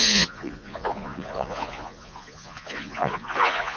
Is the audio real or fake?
fake